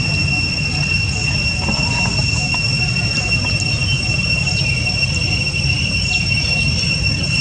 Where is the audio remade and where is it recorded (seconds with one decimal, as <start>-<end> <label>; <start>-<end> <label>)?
0.0-3.8 recorded; 3.8-6.2 remade; 6.2-7.4 recorded